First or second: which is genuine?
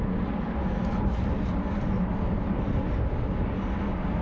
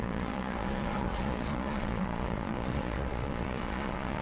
first